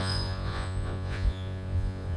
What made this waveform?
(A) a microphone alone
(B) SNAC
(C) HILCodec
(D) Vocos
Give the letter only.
D